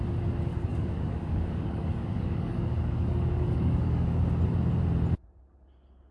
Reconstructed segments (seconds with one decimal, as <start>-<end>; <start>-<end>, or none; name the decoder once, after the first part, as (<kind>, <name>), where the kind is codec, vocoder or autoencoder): 0.5-4.2 (codec, DAC)

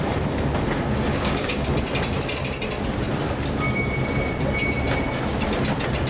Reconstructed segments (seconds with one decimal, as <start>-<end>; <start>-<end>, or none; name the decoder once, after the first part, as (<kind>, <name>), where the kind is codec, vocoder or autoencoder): 1.1-1.7 (codec, DAC)

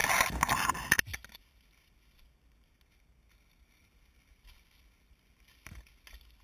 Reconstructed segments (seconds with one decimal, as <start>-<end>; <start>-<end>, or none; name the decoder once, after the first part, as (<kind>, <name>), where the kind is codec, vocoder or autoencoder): none

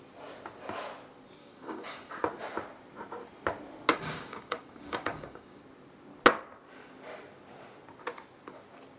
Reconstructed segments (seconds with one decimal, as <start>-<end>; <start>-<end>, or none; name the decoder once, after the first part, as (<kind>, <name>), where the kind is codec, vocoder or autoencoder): 1.4-2.1 (codec, DAC); 3.9-5.6

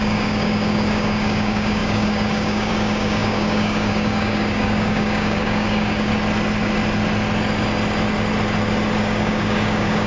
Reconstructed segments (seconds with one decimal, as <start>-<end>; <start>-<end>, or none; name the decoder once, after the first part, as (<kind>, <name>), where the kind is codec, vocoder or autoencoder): 0.0-6.1 (codec, DAC); 9.0-10.1

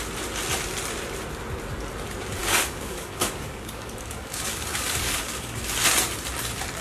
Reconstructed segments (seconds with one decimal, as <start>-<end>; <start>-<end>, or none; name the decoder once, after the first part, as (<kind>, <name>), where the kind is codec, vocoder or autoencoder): 2.4-5.6 (codec, DAC)

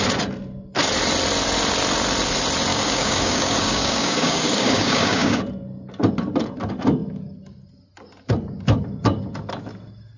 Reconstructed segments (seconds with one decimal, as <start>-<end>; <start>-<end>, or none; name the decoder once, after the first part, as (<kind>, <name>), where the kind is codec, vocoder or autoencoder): 2.7-5.4 (codec, DAC)